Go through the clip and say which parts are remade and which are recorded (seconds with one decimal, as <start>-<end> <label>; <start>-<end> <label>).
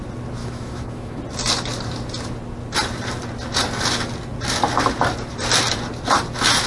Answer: 0.0-0.4 recorded; 0.4-1.2 remade; 1.2-6.7 recorded